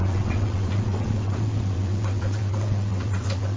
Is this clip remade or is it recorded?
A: remade